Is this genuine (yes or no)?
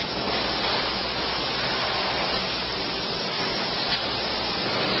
yes